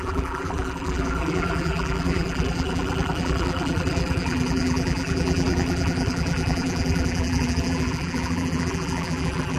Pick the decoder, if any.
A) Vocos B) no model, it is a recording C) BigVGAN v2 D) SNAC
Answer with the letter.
C